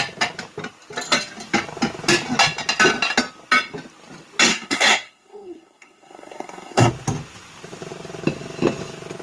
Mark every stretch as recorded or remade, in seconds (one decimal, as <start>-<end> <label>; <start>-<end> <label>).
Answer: 0.0-4.5 recorded; 4.5-6.9 remade; 6.9-9.2 recorded